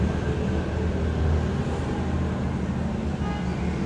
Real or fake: real